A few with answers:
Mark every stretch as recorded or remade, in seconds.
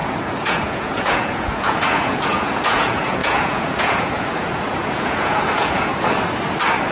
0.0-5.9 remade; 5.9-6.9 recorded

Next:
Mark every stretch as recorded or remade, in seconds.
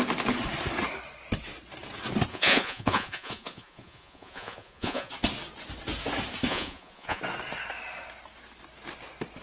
0.0-2.3 recorded; 2.3-5.1 remade; 5.1-6.5 recorded; 6.5-7.2 remade; 7.2-9.4 recorded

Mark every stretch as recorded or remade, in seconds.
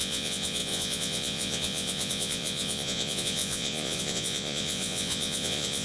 0.0-5.8 remade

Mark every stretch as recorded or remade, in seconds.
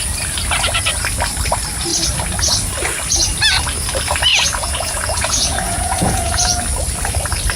0.0-4.3 recorded; 4.3-6.6 remade; 6.6-7.6 recorded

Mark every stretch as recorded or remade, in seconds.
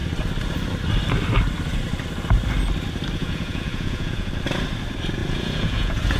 0.0-3.2 recorded; 3.2-4.3 remade; 4.3-5.2 recorded; 5.2-6.2 remade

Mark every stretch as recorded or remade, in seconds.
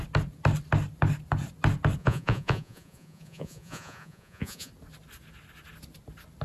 0.0-2.0 recorded; 2.0-4.7 remade; 4.7-6.4 recorded